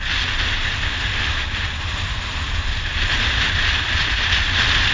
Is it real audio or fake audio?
real